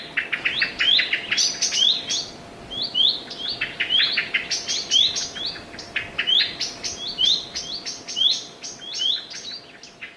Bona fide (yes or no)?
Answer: yes